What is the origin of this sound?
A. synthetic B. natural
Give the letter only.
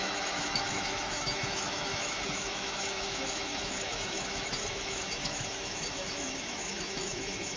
A